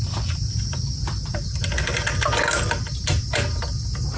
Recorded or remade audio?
recorded